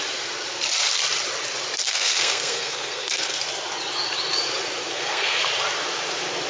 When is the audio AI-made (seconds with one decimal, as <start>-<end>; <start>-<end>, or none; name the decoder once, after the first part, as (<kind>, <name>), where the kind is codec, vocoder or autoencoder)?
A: 1.8-3.4 (codec, SNAC); 4.9-5.4